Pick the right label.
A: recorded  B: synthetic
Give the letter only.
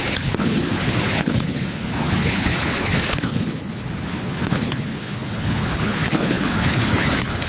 B